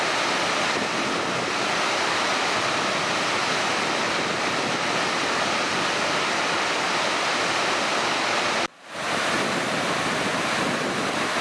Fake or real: real